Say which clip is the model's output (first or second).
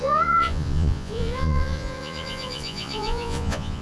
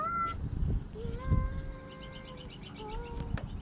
first